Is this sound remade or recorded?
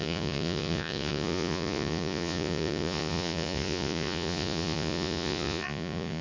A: remade